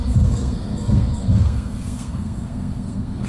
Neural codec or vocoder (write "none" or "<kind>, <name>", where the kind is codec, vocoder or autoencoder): codec, SNAC